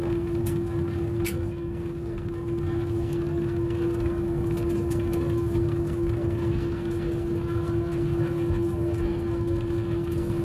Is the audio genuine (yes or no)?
no